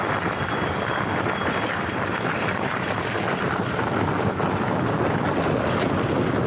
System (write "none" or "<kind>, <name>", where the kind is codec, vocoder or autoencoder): vocoder, BigVGAN v2